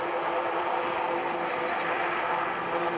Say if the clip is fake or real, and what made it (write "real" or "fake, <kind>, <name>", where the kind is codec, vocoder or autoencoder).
real